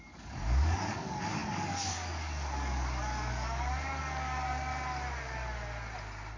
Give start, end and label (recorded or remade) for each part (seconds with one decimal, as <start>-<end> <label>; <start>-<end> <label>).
0.0-4.7 remade; 4.7-6.4 recorded

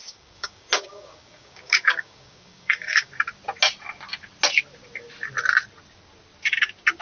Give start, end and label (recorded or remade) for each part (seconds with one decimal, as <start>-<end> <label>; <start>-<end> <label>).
0.0-3.1 remade; 3.1-7.0 recorded

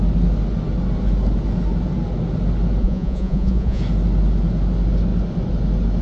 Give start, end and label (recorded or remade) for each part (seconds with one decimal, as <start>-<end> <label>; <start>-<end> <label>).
0.0-2.8 recorded; 2.8-3.8 remade; 3.8-6.0 recorded

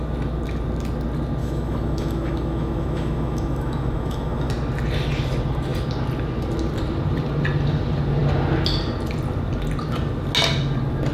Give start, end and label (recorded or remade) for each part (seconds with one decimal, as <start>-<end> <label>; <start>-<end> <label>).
0.0-1.4 recorded; 1.4-4.5 remade; 4.5-11.1 recorded

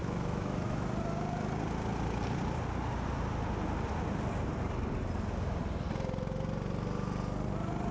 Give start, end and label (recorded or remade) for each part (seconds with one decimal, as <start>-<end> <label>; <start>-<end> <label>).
0.0-0.9 remade; 0.9-7.9 recorded

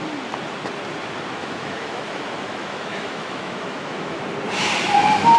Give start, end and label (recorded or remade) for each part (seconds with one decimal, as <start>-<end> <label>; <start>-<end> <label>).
0.0-1.4 recorded; 1.4-4.2 remade; 4.2-5.4 recorded